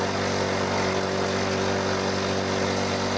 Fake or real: real